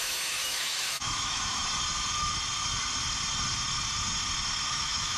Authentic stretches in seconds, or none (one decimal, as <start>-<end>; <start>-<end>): 1.6-4.7